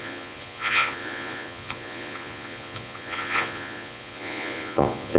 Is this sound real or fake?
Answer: fake